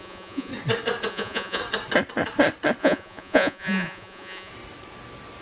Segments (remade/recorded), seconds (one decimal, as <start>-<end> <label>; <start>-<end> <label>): 0.0-0.5 remade; 0.5-1.1 recorded; 1.1-1.6 remade; 1.6-2.8 recorded; 2.8-4.5 remade; 4.5-5.4 recorded